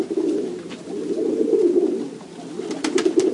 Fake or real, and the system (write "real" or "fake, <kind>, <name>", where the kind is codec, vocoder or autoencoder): real